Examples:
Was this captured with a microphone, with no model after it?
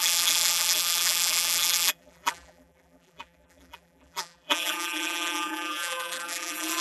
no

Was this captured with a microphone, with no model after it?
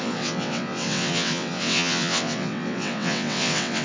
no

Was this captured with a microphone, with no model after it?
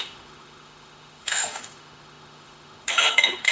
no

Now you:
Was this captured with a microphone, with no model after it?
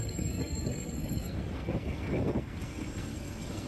no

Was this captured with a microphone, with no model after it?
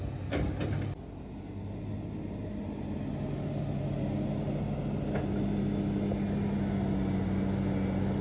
yes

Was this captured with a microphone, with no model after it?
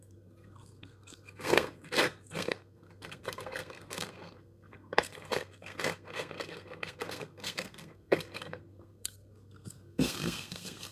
no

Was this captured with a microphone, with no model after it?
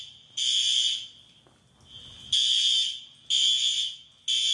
yes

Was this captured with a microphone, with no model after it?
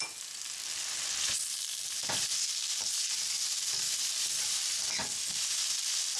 yes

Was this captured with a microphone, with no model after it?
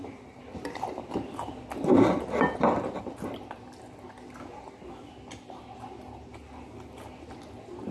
yes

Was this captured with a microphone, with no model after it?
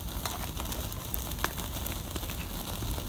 yes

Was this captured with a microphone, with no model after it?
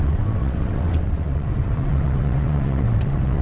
no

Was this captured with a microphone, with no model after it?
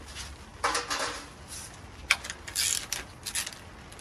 yes